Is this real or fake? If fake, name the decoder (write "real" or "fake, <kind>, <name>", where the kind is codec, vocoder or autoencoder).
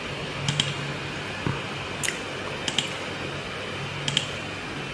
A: real